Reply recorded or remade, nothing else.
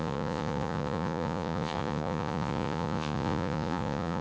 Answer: remade